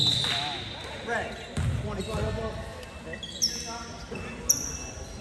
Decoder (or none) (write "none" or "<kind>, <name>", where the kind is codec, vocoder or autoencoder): none